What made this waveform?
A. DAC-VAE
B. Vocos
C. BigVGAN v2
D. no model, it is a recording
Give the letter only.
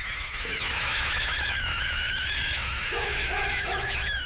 A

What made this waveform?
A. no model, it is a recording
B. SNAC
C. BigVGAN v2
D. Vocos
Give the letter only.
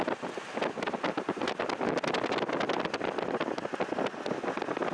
A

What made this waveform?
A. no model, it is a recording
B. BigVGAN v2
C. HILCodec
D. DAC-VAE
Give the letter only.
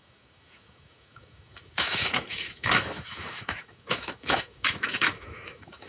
D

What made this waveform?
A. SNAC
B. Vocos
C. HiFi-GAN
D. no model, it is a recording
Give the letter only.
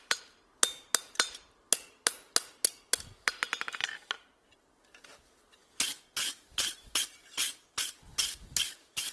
D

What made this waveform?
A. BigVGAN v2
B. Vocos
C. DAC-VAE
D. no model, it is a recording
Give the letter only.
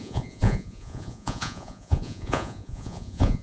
B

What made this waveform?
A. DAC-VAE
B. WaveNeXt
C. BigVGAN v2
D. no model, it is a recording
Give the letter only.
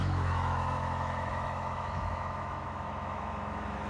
A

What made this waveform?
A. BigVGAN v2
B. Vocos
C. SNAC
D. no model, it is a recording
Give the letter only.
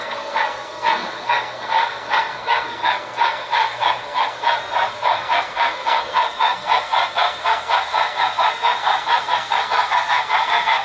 C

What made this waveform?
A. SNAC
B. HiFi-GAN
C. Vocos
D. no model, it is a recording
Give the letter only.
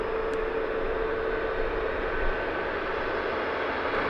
D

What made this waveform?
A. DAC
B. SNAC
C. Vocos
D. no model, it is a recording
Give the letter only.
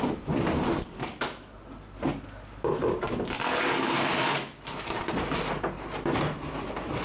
D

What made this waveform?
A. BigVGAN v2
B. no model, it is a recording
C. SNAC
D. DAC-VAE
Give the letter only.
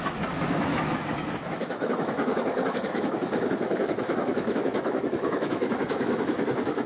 D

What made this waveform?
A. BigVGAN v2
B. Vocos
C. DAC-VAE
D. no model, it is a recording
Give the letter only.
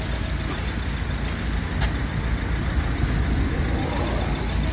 D